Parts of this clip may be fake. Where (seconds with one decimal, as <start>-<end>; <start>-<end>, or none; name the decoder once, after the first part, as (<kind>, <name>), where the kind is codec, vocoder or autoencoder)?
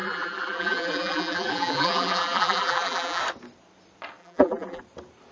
0.0-3.2 (vocoder, BigVGAN v2); 4.2-4.8